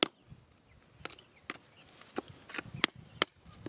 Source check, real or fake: real